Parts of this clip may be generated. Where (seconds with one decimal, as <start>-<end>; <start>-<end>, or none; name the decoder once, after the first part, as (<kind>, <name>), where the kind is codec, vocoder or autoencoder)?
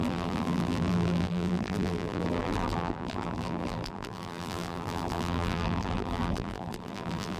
0.0-7.4 (vocoder, BigVGAN v2)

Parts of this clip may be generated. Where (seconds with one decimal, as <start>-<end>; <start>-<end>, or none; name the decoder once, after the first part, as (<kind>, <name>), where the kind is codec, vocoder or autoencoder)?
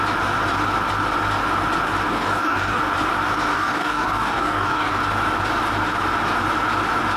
2.1-2.8 (codec, DAC); 3.5-5.0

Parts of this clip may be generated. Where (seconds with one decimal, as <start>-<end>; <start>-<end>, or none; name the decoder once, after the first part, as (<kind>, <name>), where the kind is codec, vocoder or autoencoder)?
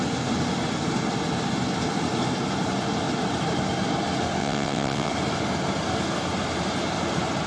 4.4-5.1 (vocoder, WaveNeXt)